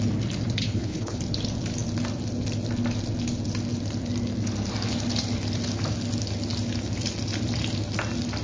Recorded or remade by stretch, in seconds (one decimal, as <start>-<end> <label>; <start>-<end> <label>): 0.0-0.6 recorded; 0.6-1.2 remade; 1.2-8.4 recorded